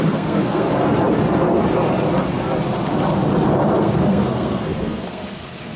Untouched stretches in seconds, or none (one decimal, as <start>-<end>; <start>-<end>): 0.7-3.8